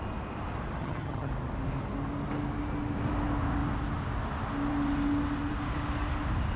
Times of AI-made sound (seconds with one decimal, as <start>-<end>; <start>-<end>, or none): 0.8-1.3